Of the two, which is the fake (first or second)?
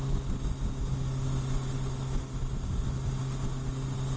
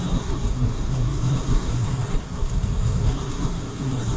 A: second